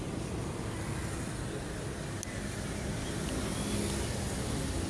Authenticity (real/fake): real